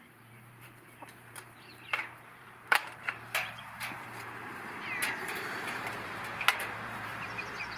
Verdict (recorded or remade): remade